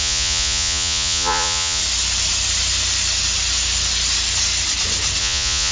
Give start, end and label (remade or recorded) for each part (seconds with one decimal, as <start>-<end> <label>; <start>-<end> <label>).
0.0-1.8 remade; 1.8-5.2 recorded; 5.2-5.7 remade